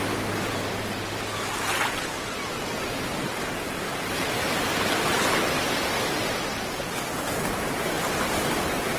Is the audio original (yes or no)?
yes